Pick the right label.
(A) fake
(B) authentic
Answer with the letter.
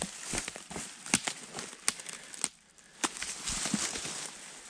B